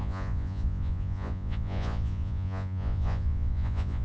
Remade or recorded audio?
remade